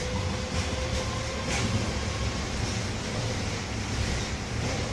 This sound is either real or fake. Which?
real